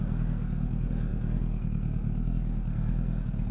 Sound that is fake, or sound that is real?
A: fake